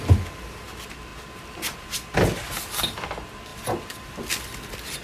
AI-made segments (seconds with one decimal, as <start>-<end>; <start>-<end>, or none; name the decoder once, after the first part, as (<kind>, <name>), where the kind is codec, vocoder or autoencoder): none